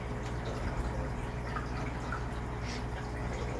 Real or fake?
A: real